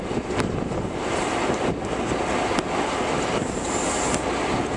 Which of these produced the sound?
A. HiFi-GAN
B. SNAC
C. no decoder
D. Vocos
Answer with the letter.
C